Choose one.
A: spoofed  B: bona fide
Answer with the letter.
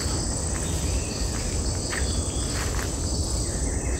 B